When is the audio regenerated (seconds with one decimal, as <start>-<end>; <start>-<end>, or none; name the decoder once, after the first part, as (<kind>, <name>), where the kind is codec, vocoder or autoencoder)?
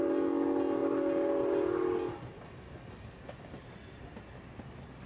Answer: none